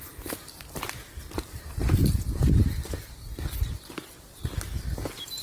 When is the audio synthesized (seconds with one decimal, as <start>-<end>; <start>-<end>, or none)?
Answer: 0.0-2.0; 2.9-5.4